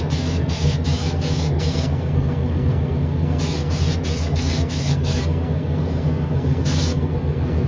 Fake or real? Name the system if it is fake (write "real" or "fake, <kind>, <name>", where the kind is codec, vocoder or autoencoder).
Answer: fake, codec, SNAC